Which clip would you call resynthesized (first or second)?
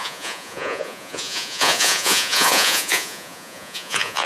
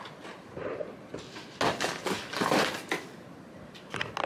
first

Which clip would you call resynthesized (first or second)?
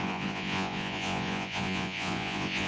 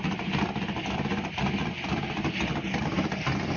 first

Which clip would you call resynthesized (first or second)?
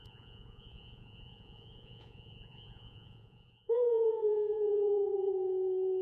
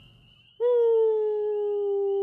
first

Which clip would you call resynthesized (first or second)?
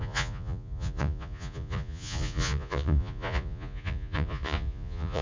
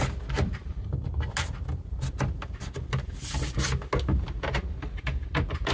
first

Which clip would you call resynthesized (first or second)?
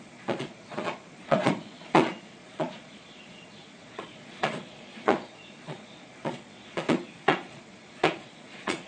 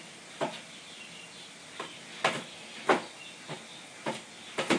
first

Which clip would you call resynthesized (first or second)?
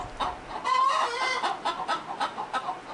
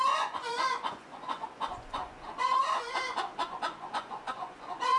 second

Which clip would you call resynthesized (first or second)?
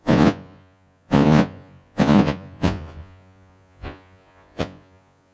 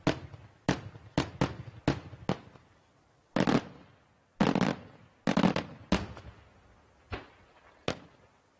first